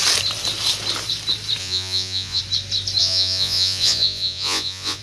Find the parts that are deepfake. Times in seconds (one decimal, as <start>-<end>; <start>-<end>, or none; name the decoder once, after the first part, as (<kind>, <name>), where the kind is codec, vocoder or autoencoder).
1.6-2.4 (vocoder, Vocos); 3.0-5.0